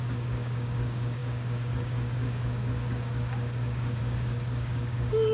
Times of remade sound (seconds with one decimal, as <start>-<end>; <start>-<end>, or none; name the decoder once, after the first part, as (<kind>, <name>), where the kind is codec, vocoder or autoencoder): 0.0-5.3 (codec, DAC)